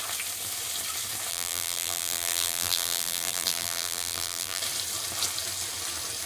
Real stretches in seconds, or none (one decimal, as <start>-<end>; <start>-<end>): 0.0-1.3; 4.6-6.3